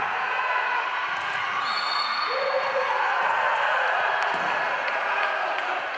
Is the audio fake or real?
fake